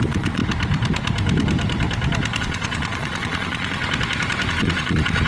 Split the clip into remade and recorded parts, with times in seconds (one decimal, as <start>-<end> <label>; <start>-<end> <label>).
0.0-0.4 remade; 0.4-2.4 recorded; 2.4-3.8 remade; 3.8-4.5 recorded; 4.5-5.3 remade